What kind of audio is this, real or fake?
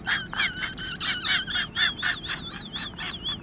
real